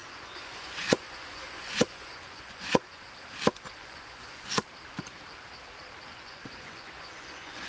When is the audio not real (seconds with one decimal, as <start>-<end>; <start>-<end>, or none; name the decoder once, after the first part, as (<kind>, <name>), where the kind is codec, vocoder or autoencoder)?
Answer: 0.0-3.1 (vocoder, Vocos); 3.8-4.5; 6.1-7.7